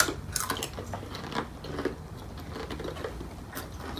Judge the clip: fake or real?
real